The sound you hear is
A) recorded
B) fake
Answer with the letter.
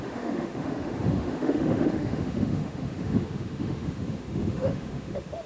B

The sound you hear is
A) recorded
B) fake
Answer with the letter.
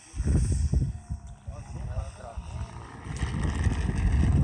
A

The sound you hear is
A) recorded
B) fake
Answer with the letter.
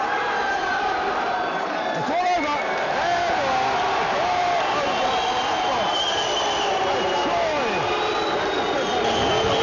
A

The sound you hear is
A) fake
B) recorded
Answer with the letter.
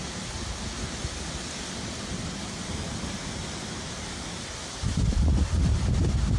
B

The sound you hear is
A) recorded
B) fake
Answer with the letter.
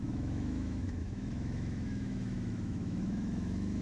B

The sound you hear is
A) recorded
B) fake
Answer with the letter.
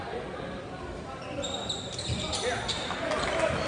A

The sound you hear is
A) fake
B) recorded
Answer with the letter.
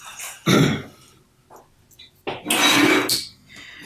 B